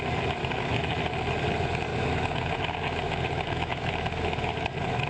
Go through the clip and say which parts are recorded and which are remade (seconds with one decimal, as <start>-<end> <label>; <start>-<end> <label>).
0.0-0.4 recorded; 0.4-1.0 remade; 1.0-1.9 recorded; 1.9-5.1 remade